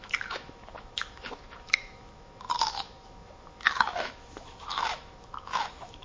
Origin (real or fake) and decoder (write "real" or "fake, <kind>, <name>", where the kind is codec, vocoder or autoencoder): fake, autoencoder, DAC-VAE